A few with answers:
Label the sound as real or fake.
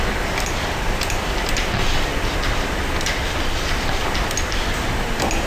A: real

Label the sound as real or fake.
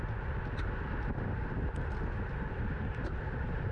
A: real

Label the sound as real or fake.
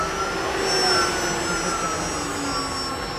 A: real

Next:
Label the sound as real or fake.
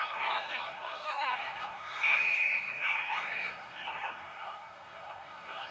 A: fake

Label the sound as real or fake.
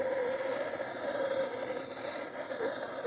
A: real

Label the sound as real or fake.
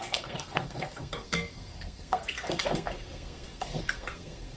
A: fake